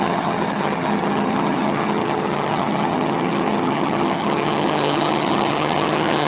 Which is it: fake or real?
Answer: fake